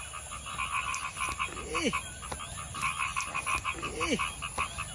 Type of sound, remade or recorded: recorded